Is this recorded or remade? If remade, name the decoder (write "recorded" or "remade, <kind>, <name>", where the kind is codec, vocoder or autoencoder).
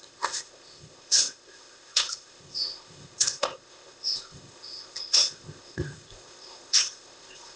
remade, codec, ZipCodec